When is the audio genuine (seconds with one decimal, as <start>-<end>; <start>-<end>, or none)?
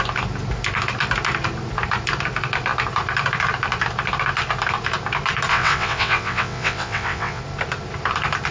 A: 0.0-5.5; 7.4-8.5